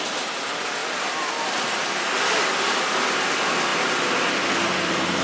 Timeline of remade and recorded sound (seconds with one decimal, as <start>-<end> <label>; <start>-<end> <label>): 0.0-5.2 recorded